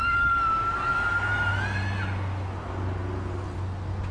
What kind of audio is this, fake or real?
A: real